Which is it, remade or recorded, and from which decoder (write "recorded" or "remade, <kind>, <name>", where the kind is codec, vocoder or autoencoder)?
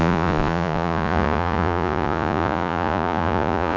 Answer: remade, vocoder, Vocos